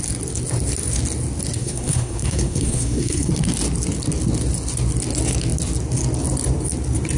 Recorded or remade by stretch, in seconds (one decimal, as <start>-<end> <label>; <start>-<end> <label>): 0.0-1.6 recorded; 1.6-3.3 remade; 3.3-7.2 recorded